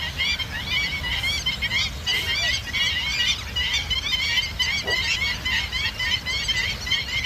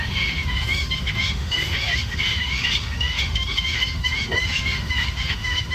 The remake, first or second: second